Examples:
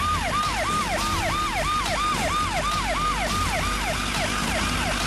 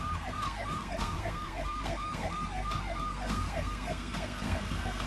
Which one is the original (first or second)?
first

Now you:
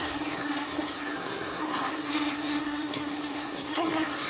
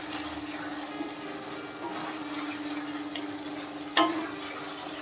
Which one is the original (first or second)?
second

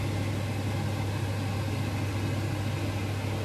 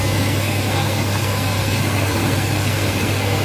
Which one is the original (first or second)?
first